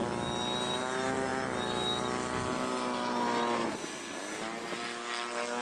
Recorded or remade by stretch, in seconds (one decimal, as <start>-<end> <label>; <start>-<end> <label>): 0.0-5.6 recorded